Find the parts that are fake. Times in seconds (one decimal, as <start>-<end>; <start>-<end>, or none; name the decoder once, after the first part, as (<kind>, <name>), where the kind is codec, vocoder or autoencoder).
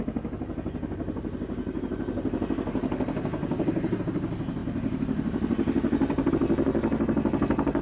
3.4-4.0 (vocoder, BigVGAN v2); 4.6-6.3